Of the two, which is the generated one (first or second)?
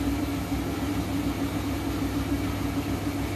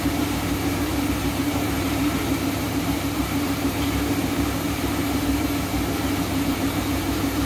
second